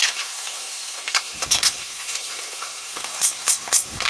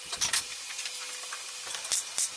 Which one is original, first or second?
second